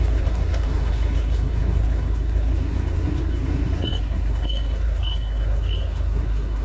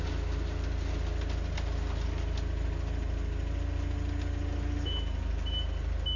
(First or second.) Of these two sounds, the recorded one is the second